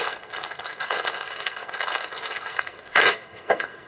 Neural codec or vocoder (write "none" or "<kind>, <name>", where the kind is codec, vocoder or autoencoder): codec, SNAC